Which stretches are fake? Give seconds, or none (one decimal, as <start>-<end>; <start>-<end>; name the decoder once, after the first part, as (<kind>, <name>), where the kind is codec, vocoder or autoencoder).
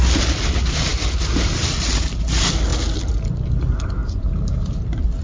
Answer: none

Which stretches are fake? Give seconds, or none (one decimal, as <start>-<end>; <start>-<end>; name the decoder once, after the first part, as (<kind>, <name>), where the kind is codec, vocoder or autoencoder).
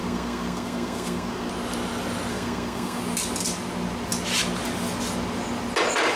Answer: 0.0-1.5 (codec, SNAC); 2.3-3.0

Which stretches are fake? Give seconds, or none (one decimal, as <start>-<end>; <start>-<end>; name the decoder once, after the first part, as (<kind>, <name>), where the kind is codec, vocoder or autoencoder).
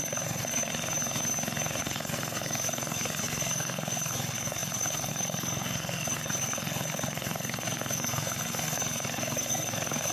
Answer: 0.0-0.7 (codec, SNAC); 1.8-10.1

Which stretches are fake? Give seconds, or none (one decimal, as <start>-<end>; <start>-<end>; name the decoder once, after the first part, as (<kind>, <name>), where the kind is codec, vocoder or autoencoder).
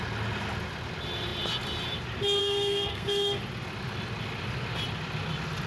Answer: 2.4-3.4 (codec, SNAC)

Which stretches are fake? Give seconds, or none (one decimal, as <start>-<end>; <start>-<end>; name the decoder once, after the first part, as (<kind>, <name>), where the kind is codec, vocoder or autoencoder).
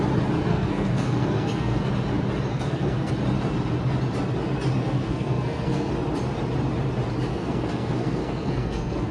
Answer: 0.5-1.9 (codec, SNAC); 2.5-3.1; 4.8-5.9; 7.3-9.1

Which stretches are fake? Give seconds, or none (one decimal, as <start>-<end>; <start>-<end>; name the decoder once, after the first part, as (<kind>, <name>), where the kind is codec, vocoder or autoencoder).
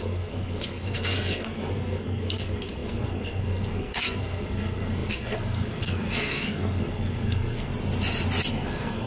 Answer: 0.0-7.7 (codec, SNAC); 8.5-9.1